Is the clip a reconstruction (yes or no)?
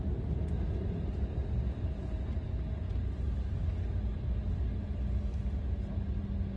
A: no